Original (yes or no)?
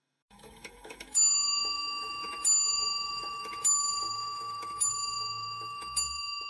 no